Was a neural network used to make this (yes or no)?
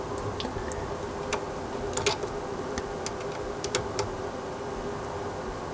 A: no